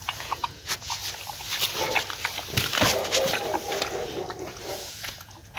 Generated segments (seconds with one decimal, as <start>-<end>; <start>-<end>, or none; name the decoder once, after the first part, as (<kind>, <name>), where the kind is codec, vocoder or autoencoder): 0.0-1.0 (vocoder, Vocos); 4.4-5.6